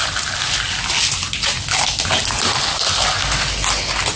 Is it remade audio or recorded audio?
recorded